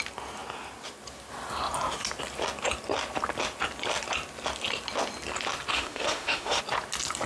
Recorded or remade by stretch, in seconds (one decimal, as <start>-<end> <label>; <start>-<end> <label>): 0.0-5.7 recorded; 5.7-6.6 remade; 6.6-7.3 recorded